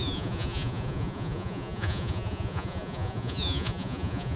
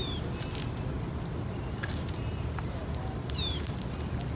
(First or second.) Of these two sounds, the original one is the second